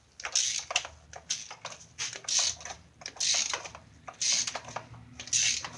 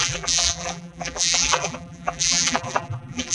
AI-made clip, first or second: second